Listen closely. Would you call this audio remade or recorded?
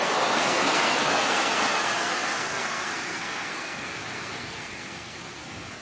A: remade